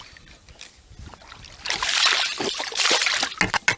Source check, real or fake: real